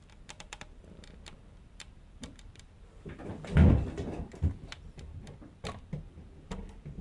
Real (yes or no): no